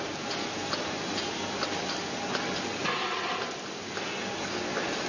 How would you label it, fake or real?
real